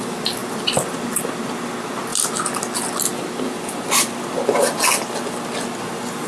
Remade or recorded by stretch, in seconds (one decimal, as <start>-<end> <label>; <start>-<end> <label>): 0.0-0.4 recorded; 0.4-1.2 remade; 1.2-6.3 recorded